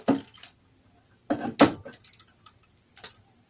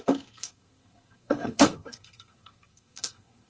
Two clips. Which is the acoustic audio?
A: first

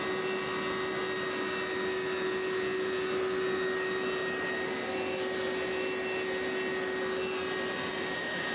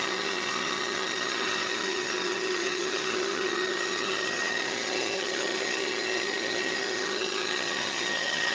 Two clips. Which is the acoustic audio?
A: first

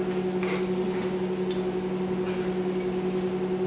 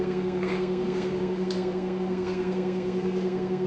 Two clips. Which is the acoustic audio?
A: first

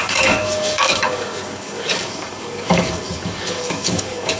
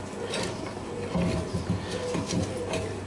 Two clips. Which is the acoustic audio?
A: second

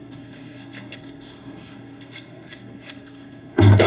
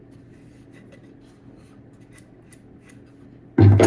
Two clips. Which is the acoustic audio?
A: second